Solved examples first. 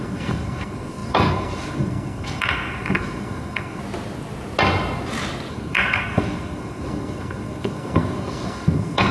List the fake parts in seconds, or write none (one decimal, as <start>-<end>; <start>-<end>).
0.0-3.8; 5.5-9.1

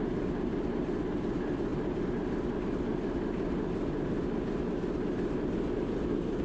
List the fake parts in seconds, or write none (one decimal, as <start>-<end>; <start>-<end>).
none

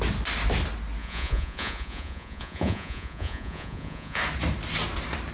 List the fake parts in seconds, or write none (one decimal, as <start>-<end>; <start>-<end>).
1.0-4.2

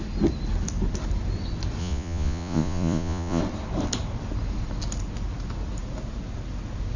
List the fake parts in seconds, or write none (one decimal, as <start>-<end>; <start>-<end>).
1.8-3.4

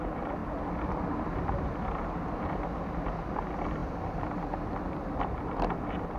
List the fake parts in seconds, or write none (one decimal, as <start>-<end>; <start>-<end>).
none

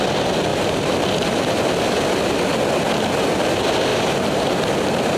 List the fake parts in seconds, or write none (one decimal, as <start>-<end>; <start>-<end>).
0.5-1.3; 3.9-4.6

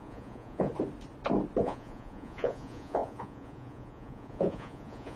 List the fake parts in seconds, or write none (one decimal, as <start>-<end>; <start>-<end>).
0.0-0.7; 1.6-5.2

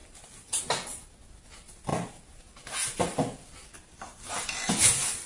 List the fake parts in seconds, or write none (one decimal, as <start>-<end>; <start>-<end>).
0.0-0.6